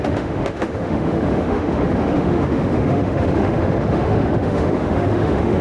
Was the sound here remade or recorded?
remade